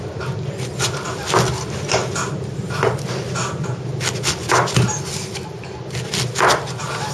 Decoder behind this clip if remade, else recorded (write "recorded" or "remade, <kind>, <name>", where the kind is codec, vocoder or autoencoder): recorded